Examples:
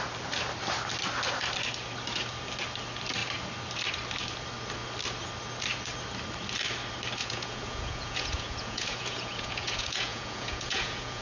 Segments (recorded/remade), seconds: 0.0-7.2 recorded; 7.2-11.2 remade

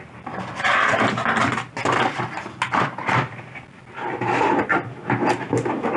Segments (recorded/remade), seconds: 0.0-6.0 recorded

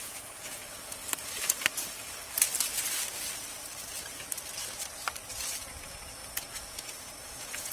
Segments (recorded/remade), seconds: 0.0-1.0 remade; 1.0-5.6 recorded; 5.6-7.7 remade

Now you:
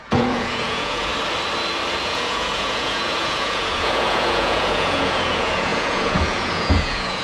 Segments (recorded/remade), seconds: 0.0-1.1 remade; 1.1-2.0 recorded; 2.0-7.2 remade

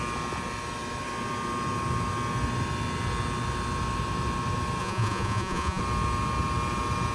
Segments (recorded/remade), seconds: 0.0-4.8 recorded; 4.8-5.8 remade; 5.8-7.1 recorded

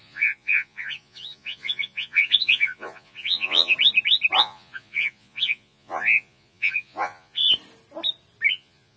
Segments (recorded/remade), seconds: 0.0-3.7 remade; 3.7-4.4 recorded; 4.4-7.4 remade; 7.4-8.5 recorded; 8.5-9.0 remade